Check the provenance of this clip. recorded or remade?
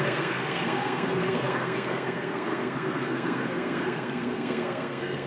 remade